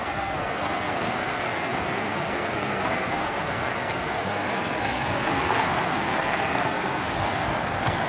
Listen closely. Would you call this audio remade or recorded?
remade